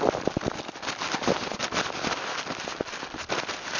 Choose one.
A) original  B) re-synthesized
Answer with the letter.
A